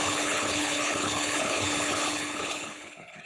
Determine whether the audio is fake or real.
fake